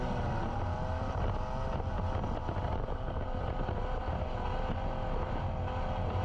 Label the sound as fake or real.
real